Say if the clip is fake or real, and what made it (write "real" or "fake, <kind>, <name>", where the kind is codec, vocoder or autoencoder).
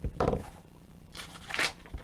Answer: real